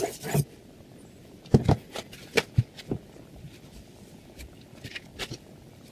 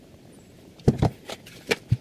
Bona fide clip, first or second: first